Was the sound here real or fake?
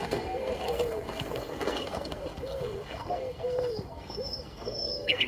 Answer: fake